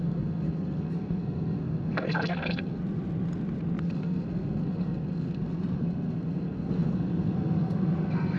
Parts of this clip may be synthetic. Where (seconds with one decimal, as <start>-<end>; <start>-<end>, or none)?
0.0-2.8; 3.8-8.4

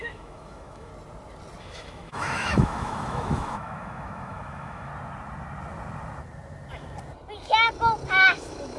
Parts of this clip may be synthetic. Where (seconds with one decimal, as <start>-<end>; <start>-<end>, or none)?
0.0-0.9; 1.6-4.9; 8.1-8.8

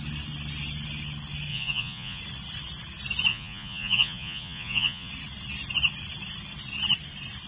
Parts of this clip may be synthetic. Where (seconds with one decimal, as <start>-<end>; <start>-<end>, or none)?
1.5-2.2; 3.3-5.1

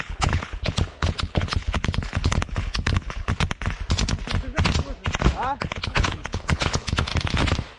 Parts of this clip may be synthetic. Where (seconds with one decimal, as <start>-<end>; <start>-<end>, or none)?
0.0-3.3; 5.6-7.1

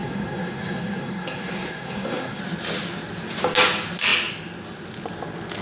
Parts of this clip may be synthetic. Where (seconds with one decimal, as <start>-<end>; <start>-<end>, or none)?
0.0-2.4

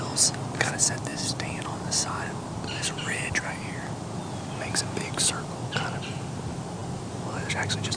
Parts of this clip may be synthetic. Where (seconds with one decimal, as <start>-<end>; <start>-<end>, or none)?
none

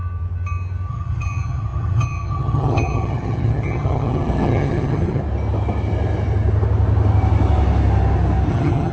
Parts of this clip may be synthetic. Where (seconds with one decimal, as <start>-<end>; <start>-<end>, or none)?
0.9-5.2; 8.5-8.9